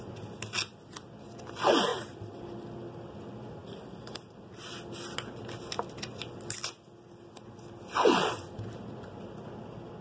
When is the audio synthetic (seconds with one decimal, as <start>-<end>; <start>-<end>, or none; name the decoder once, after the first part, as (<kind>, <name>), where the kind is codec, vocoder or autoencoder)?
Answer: none